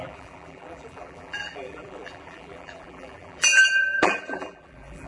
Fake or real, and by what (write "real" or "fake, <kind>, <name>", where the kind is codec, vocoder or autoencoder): fake, vocoder, BigVGAN v2